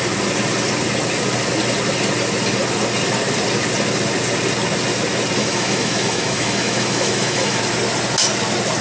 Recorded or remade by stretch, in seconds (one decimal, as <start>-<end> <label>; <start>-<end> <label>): 0.0-5.4 recorded; 5.4-7.6 remade; 7.6-8.8 recorded